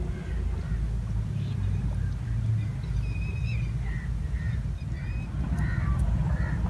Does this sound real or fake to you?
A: real